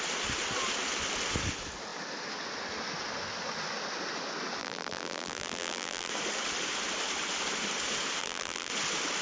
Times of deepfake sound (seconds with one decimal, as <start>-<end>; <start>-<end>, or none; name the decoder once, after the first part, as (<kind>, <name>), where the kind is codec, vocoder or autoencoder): 4.6-6.1 (vocoder, BigVGAN v2); 8.2-8.7